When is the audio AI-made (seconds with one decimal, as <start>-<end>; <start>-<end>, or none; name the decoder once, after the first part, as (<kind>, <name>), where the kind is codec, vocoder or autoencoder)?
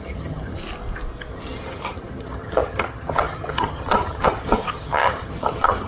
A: 0.0-0.6 (vocoder, HiFi-GAN); 1.3-5.9